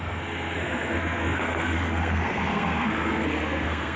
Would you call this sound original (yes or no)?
no